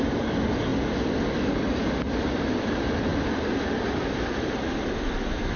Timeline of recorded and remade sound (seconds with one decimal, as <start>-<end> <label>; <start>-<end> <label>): 0.0-5.6 recorded